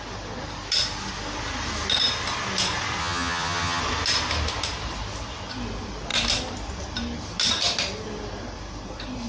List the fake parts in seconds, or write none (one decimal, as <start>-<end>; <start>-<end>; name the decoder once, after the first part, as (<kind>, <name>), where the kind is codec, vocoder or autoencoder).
3.0-3.8 (vocoder, HiFi-GAN)